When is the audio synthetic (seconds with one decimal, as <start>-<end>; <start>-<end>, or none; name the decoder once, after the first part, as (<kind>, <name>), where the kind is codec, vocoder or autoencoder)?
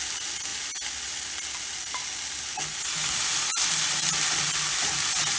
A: none